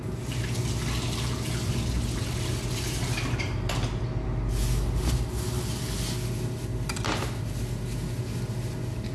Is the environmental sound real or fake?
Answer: real